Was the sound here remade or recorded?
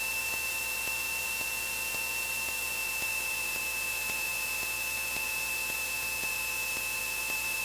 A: remade